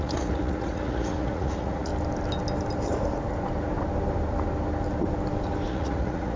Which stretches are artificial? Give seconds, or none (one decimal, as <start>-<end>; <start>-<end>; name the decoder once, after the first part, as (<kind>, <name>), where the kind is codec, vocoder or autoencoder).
0.0-1.9 (vocoder, Vocos); 5.7-6.4